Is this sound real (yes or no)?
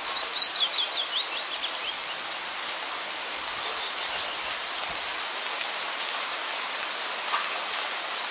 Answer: yes